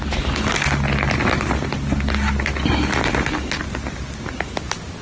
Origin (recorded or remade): recorded